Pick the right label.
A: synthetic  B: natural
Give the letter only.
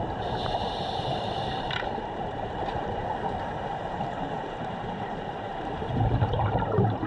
A